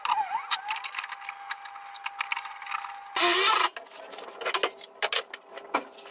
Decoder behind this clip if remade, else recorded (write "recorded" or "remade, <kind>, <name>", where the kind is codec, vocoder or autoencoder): recorded